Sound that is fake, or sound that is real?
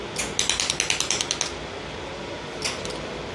real